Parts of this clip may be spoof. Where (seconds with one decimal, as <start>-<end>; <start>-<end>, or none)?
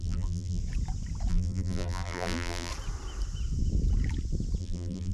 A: 0.0-0.6; 1.3-2.7; 4.6-5.1